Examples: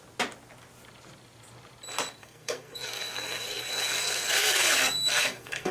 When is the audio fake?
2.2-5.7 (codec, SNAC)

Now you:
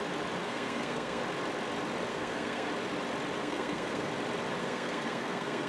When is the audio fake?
0.4-1.2 (codec, SNAC); 2.1-2.7; 3.4-4.1; 4.6-5.7

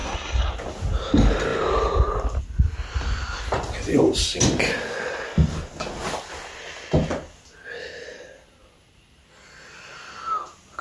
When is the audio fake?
0.0-0.5 (codec, SNAC)

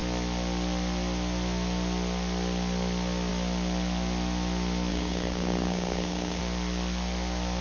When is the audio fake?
4.9-6.4 (codec, SNAC)